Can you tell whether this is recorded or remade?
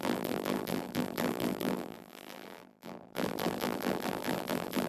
remade